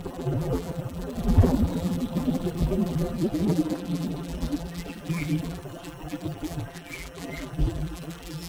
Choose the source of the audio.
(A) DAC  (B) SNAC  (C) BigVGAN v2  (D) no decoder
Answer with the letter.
C